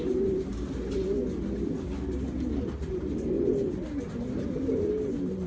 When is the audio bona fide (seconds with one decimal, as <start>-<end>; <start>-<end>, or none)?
0.0-5.5